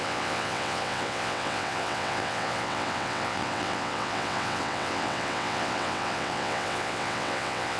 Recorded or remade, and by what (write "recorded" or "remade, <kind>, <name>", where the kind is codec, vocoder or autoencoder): remade, vocoder, WaveNeXt